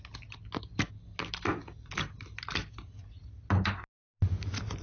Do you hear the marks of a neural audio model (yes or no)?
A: no